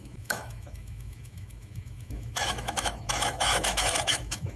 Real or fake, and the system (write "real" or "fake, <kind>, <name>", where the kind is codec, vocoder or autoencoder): fake, autoencoder, DAC-VAE